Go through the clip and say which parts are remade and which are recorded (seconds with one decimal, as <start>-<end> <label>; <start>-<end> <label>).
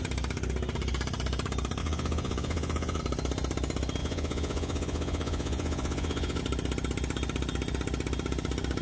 0.0-1.8 recorded; 1.8-3.0 remade; 3.0-4.0 recorded; 4.0-6.4 remade; 6.4-8.8 recorded